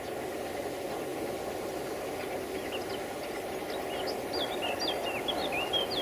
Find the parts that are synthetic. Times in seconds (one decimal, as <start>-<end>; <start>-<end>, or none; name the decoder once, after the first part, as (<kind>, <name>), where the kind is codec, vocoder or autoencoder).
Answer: none